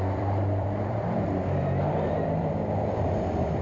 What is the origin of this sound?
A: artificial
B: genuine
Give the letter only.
A